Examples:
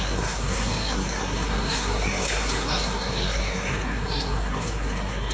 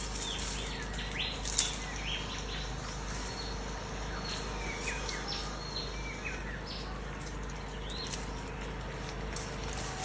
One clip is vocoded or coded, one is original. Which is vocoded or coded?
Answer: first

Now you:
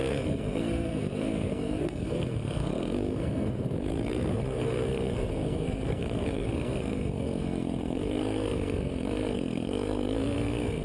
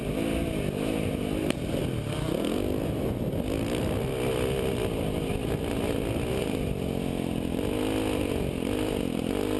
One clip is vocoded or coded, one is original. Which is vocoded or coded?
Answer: first